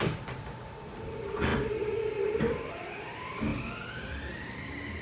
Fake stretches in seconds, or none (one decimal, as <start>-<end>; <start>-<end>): 0.0-3.5

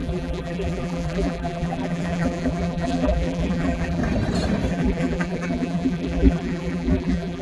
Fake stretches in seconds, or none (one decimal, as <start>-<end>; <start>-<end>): 0.0-4.0; 4.7-7.4